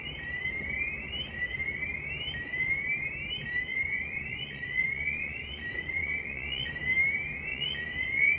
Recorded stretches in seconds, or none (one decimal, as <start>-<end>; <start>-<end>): 0.0-3.7; 6.7-7.5